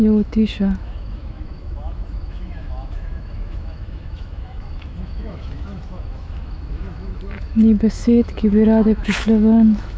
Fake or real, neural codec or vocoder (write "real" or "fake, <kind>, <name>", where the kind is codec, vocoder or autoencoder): fake, autoencoder, DAC-VAE